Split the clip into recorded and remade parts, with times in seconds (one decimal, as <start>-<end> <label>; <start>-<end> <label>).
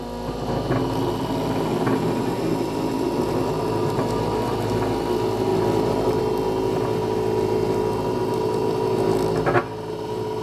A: 0.0-10.4 recorded